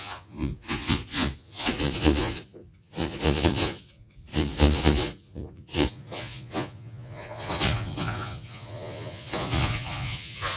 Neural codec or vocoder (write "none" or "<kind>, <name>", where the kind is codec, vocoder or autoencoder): vocoder, Vocos